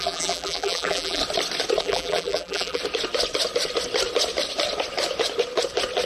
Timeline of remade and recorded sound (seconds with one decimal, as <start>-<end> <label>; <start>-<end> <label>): 0.0-1.2 remade; 1.2-1.8 recorded; 1.8-2.8 remade; 2.8-6.1 recorded